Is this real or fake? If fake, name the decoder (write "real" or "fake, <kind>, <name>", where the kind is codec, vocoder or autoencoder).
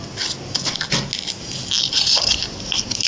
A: real